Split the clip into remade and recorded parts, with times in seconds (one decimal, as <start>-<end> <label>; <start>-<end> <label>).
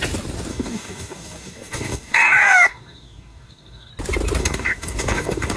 0.0-0.5 recorded; 0.5-3.9 remade; 3.9-4.4 recorded; 4.4-5.6 remade